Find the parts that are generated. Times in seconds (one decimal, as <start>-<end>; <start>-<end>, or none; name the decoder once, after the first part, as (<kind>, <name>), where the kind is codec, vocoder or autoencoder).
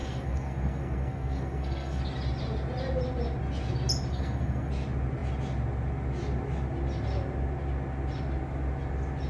0.0-2.0 (codec, SNAC); 4.1-4.7